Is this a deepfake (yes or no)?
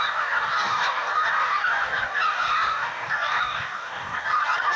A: yes